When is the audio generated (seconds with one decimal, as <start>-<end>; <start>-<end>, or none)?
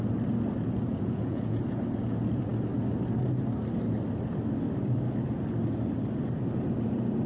0.9-1.6